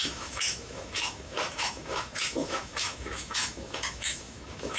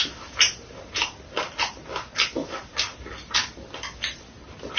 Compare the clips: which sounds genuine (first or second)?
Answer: second